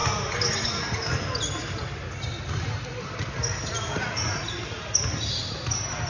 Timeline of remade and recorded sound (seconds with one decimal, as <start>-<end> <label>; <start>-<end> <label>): 0.0-6.1 recorded